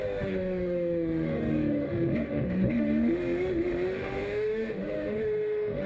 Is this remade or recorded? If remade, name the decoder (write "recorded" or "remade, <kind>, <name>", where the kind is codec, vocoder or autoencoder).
remade, autoencoder, DAC-VAE